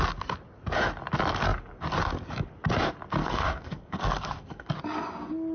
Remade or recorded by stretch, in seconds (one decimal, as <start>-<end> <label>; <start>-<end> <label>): 0.0-3.2 recorded; 3.2-4.7 remade; 4.7-5.5 recorded

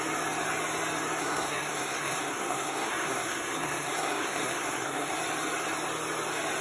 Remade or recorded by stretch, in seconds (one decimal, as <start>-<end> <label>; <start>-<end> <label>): 0.0-1.2 recorded; 1.2-5.1 remade; 5.1-6.6 recorded

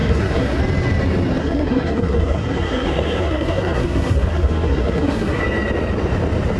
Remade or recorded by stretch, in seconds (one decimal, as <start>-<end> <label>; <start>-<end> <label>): 0.0-0.6 remade; 0.6-1.4 recorded; 1.4-5.4 remade; 5.4-6.6 recorded

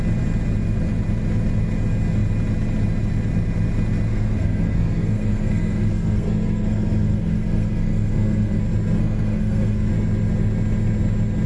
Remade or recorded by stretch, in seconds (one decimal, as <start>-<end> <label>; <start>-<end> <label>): 0.0-4.1 recorded; 4.1-8.6 remade; 8.6-9.0 recorded; 9.0-9.9 remade; 9.9-11.5 recorded

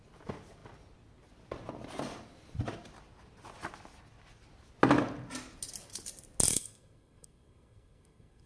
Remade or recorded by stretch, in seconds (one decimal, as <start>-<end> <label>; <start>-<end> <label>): 0.0-6.5 recorded; 6.5-8.5 remade

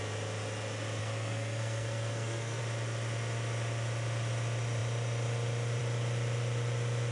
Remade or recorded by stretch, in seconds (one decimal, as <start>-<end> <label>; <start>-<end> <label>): 0.0-1.0 recorded; 1.0-2.6 remade; 2.6-7.1 recorded

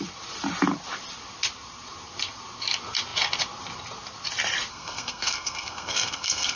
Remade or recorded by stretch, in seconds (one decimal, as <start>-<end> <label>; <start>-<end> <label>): 0.0-4.7 recorded; 4.7-6.6 remade